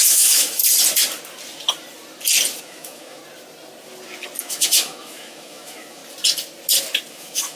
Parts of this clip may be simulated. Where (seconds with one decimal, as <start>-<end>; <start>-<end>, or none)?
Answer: 0.0-0.6; 2.6-3.2; 4.4-6.0; 7.1-7.6